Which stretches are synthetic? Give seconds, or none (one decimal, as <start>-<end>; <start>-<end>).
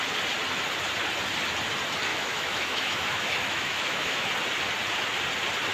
2.1-4.3